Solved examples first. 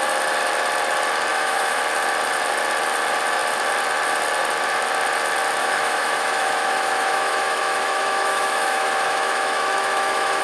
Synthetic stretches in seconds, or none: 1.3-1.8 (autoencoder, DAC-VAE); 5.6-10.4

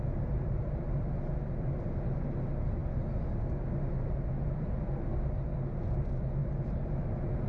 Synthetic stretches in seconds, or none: 6.4-6.9 (vocoder, BigVGAN v2)

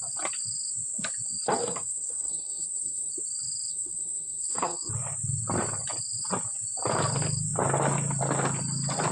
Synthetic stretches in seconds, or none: 1.6-3.1 (codec, SNAC); 3.7-4.9

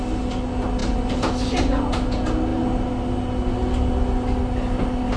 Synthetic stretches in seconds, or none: none